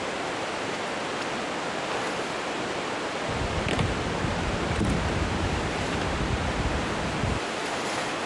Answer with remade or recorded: recorded